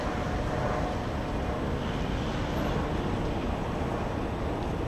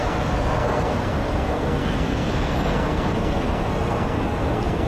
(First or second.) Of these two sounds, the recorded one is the first